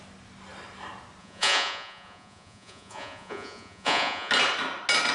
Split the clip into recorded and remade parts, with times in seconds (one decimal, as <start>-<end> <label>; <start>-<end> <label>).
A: 0.0-1.2 recorded; 1.2-4.3 remade; 4.3-5.1 recorded

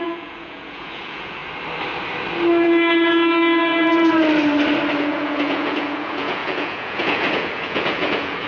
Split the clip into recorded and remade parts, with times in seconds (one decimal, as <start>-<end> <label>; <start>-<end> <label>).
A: 0.0-1.4 remade; 1.4-5.0 recorded; 5.0-8.5 remade